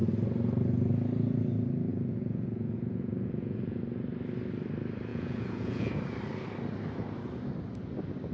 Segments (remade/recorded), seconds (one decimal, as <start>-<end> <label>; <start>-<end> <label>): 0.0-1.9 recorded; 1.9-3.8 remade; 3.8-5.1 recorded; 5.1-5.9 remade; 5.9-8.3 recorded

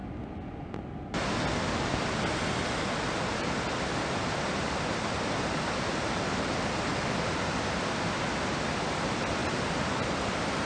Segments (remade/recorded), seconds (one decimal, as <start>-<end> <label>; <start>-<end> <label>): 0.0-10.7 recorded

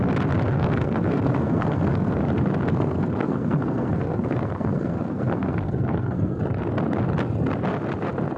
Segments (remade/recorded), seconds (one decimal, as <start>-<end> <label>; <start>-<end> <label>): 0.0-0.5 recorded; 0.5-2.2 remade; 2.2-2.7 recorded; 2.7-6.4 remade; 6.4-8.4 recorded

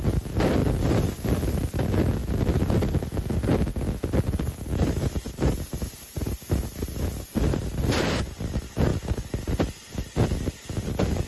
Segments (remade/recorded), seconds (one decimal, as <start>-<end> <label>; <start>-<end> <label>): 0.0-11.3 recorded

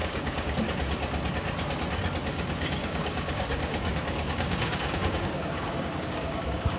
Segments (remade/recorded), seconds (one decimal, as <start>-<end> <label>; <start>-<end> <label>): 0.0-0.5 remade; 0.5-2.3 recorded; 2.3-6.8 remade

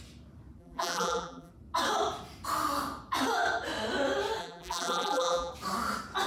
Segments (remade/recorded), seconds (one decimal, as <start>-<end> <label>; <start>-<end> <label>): 0.0-0.6 recorded; 0.6-1.5 remade; 1.5-4.4 recorded; 4.4-5.5 remade; 5.5-6.3 recorded

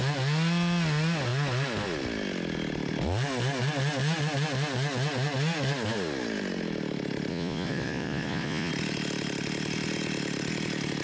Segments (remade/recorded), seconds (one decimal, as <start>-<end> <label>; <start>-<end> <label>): 0.0-7.3 recorded; 7.3-8.7 remade; 8.7-11.0 recorded